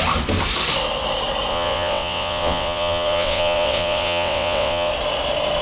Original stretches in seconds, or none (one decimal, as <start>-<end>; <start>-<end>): 0.0-1.5; 4.9-5.6